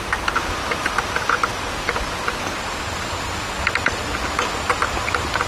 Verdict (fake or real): real